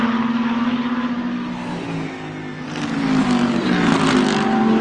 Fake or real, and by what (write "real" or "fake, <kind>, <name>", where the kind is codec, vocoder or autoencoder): real